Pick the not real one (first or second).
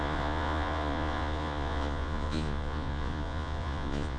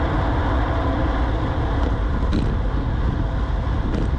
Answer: first